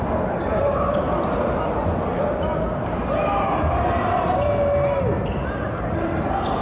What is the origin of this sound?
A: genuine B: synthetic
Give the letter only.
A